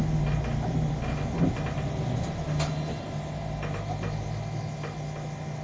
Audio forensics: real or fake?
real